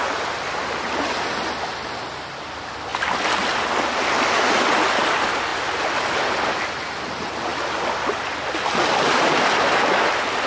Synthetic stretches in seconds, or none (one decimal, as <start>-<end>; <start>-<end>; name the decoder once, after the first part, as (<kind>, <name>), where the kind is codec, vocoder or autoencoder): none